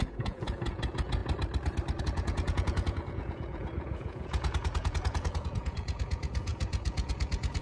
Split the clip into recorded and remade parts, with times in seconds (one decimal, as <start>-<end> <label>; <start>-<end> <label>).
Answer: 0.0-1.2 remade; 1.2-2.0 recorded; 2.0-7.6 remade